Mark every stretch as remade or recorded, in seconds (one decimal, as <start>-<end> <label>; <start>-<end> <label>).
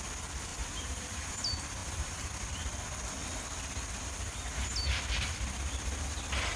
0.0-0.5 recorded; 0.5-1.3 remade; 1.3-1.8 recorded; 1.8-2.3 remade; 2.3-6.6 recorded